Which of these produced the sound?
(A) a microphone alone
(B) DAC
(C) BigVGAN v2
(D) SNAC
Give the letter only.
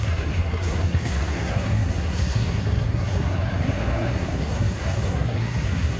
D